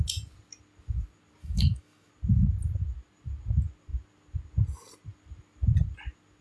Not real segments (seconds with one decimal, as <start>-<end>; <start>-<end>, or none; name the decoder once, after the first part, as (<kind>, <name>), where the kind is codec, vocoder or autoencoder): 1.4-2.1 (autoencoder, DAC-VAE)